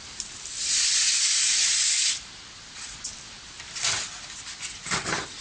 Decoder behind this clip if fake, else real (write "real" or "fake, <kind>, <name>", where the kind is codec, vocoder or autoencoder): real